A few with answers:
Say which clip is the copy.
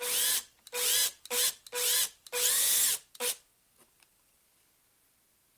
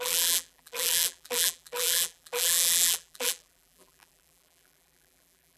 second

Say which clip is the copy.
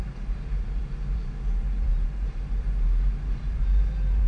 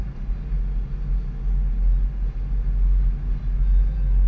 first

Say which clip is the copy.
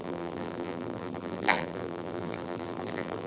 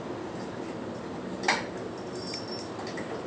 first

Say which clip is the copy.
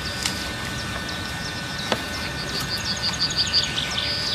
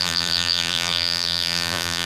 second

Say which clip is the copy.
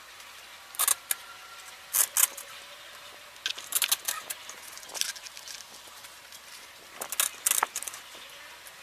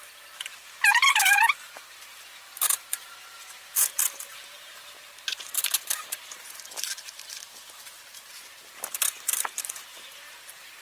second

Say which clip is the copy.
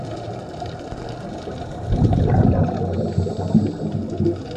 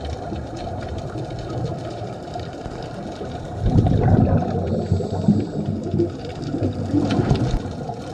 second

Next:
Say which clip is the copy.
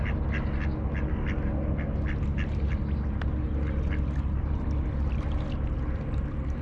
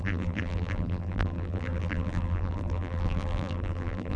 second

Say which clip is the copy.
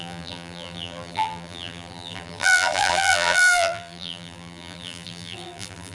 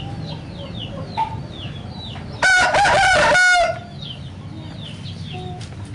first